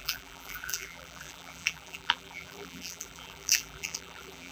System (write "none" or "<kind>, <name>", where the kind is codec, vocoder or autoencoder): vocoder, BigVGAN v2